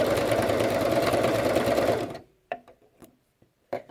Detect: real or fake fake